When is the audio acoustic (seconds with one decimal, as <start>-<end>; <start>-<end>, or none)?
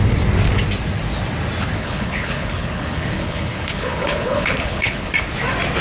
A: 0.0-1.8; 5.1-5.8